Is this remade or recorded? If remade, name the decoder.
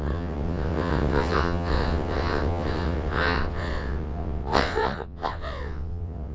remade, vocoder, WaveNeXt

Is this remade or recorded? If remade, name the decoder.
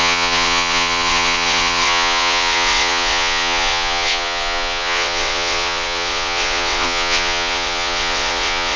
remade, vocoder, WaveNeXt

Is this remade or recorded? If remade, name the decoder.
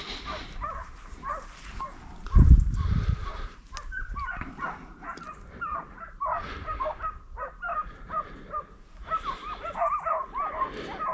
recorded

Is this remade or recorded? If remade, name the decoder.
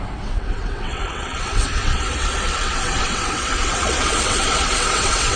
remade, vocoder, WaveNeXt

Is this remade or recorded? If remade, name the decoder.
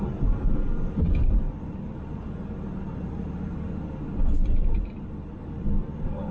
recorded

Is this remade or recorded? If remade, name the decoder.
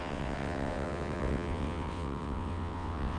remade, vocoder, WaveNeXt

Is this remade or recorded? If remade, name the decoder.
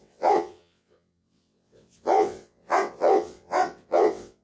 remade, vocoder, WaveNeXt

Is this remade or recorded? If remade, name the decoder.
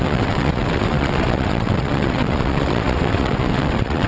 remade, vocoder, WaveNeXt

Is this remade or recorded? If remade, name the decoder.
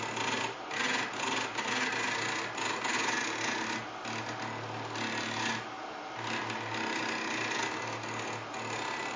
recorded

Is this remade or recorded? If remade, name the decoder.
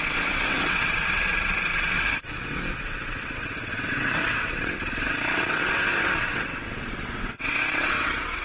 remade, vocoder, WaveNeXt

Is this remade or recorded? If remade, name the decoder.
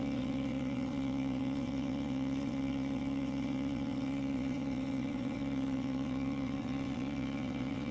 remade, vocoder, WaveNeXt